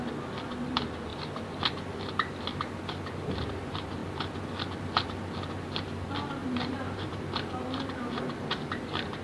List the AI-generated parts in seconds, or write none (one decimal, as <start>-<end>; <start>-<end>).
6.4-7.2